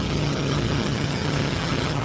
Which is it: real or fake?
fake